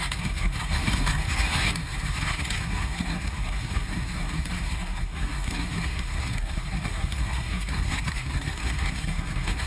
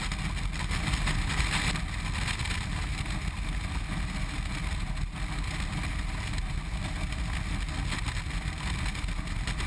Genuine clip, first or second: second